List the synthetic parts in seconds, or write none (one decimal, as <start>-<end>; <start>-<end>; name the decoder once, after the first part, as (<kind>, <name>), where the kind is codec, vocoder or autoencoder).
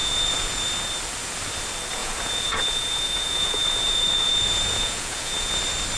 0.0-0.6 (vocoder, Vocos); 2.0-5.6